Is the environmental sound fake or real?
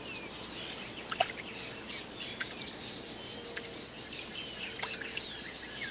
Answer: real